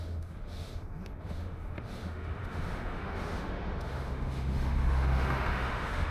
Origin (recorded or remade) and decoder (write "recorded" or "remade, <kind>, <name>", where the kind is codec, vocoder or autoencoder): remade, autoencoder, DAC-VAE